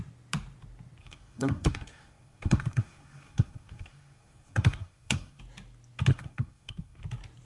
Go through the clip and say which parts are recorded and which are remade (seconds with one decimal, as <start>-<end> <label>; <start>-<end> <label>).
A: 0.0-1.0 recorded; 1.0-5.4 remade; 5.4-6.1 recorded; 6.1-7.0 remade; 7.0-7.4 recorded